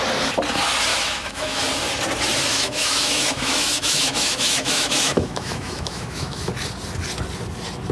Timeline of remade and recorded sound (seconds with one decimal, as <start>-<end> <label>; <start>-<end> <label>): 0.0-0.9 recorded; 0.9-1.6 remade; 1.6-2.5 recorded; 2.5-6.5 remade; 6.5-7.9 recorded